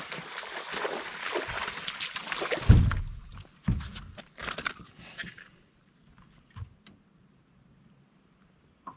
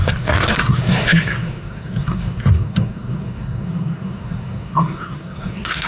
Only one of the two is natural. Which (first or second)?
first